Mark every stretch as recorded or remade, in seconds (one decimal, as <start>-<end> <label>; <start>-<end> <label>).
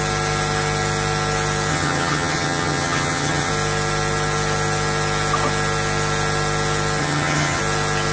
0.0-1.7 recorded; 1.7-3.5 remade; 3.5-7.0 recorded; 7.0-7.6 remade; 7.6-8.1 recorded